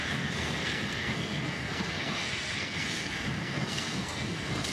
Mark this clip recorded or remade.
remade